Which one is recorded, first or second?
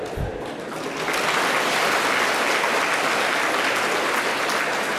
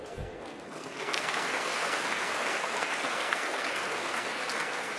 first